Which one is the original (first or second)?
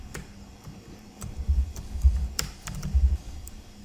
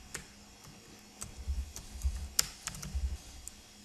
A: second